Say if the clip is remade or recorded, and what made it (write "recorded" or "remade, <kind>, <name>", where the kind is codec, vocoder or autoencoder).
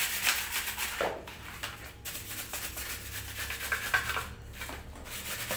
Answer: recorded